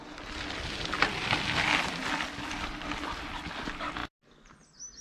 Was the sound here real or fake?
real